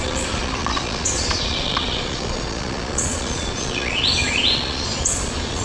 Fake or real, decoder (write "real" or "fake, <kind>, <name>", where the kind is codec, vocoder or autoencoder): fake, vocoder, Vocos